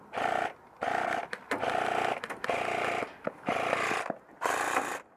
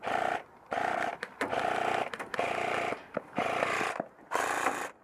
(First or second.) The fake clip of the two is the second